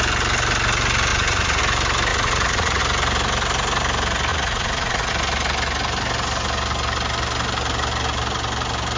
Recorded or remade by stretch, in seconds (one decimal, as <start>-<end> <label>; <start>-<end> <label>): 0.0-1.1 recorded; 1.1-1.6 remade; 1.6-2.1 recorded; 2.1-2.8 remade; 2.8-4.3 recorded; 4.3-5.1 remade; 5.1-9.0 recorded